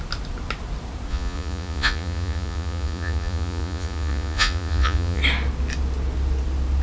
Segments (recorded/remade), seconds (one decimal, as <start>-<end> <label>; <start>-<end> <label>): 0.0-1.1 recorded; 1.1-5.2 remade; 5.2-6.8 recorded

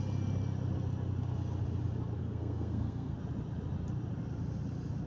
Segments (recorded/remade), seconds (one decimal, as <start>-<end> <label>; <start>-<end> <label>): 0.0-2.2 recorded; 2.2-3.2 remade; 3.2-5.1 recorded

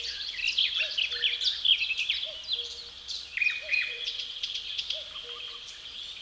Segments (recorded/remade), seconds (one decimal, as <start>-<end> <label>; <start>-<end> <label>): 0.0-0.4 remade; 0.4-3.7 recorded; 3.7-4.8 remade; 4.8-5.4 recorded; 5.4-6.2 remade

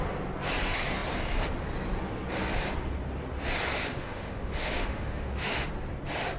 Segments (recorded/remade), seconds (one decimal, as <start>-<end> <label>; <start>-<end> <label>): 0.0-3.9 recorded; 3.9-5.7 remade; 5.7-6.4 recorded

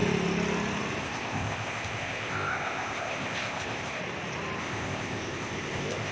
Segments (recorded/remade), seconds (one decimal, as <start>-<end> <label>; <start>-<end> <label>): 0.0-1.0 recorded; 1.0-4.0 remade; 4.0-4.6 recorded; 4.6-6.1 remade

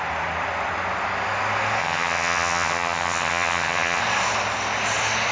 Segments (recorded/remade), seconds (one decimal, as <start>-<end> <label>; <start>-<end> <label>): 0.0-1.8 recorded; 1.8-4.0 remade; 4.0-5.3 recorded

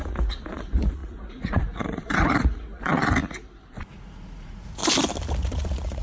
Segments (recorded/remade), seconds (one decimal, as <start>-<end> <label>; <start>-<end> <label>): 0.0-3.2 remade; 3.2-3.9 recorded; 3.9-4.8 remade; 4.8-5.4 recorded; 5.4-6.0 remade

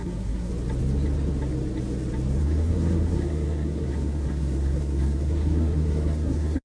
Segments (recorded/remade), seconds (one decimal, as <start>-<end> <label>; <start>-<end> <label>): 0.0-0.5 remade; 0.5-2.4 recorded; 2.4-6.6 remade